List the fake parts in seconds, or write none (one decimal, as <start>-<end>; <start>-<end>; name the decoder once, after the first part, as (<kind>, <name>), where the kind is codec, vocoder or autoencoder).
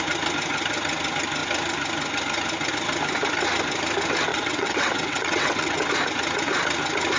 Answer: 4.3-5.9 (vocoder, WaveNeXt)